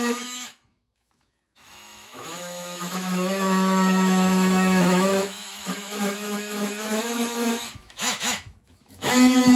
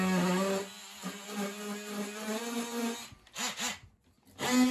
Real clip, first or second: second